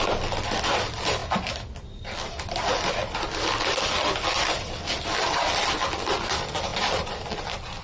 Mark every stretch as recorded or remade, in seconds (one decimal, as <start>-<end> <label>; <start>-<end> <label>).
0.0-7.8 recorded